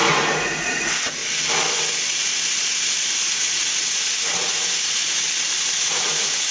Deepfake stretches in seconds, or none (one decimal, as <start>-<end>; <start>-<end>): 0.0-1.2; 3.2-5.0; 5.7-6.5